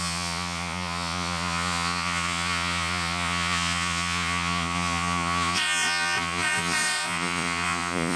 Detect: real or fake fake